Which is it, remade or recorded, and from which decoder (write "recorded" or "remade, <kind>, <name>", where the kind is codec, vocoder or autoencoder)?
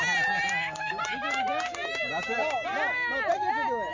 recorded